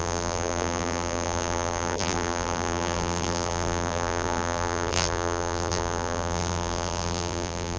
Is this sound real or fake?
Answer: fake